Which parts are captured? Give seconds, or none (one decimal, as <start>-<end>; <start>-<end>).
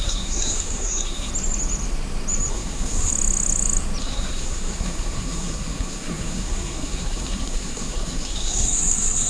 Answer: 1.3-2.5; 3.1-4.0